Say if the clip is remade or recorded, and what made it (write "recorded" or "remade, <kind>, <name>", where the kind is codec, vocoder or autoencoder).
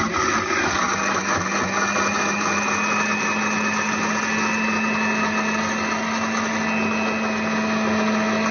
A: recorded